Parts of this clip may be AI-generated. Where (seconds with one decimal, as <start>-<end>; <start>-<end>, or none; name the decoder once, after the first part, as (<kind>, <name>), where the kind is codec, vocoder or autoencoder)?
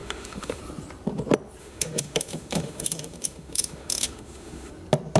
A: 0.0-0.6 (autoencoder, DAC-VAE); 1.6-4.7